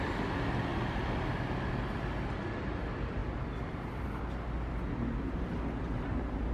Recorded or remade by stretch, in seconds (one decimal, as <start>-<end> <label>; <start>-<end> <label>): 0.0-6.5 recorded